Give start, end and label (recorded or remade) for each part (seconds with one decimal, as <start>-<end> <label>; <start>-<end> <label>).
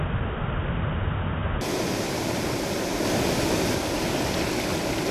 0.0-5.1 recorded